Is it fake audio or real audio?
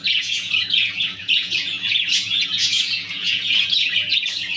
fake